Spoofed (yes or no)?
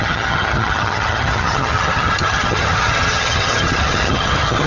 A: yes